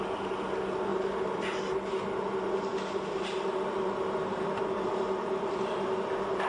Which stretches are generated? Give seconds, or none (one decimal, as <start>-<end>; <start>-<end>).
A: 2.7-5.9